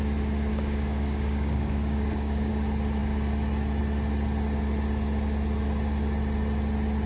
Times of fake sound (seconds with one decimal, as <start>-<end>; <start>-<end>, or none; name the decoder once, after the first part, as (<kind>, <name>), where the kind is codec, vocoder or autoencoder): 0.5-2.5 (codec, DAC)